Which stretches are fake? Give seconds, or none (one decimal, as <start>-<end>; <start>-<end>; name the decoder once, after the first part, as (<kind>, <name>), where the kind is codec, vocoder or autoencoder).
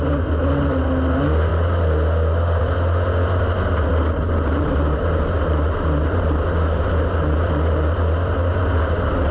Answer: none